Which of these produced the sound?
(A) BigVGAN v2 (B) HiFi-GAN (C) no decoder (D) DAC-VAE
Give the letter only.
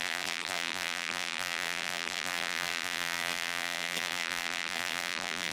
A